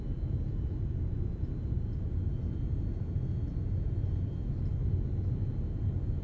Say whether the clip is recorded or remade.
recorded